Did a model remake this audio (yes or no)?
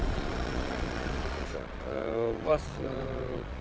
yes